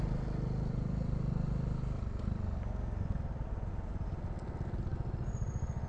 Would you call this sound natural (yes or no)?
yes